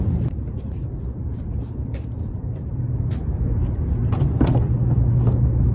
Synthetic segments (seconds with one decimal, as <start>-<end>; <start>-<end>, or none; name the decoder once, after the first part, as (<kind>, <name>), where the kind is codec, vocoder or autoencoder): 1.3-4.2 (vocoder, BigVGAN v2)